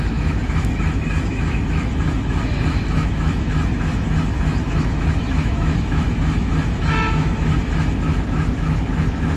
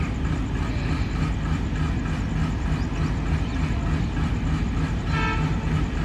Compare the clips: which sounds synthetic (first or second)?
first